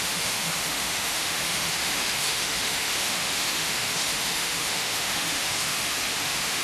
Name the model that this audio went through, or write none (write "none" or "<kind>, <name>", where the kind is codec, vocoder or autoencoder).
autoencoder, DAC-VAE